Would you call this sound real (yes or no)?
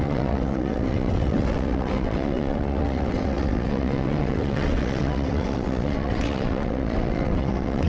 no